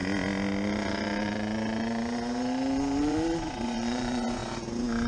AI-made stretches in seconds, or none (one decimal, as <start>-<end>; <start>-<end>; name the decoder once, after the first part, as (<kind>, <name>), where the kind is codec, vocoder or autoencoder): 3.0-4.4 (vocoder, Vocos)